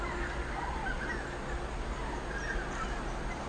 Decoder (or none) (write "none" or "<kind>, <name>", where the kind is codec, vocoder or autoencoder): none